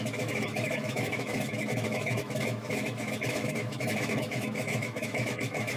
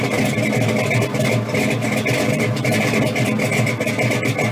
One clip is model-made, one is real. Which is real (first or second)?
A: second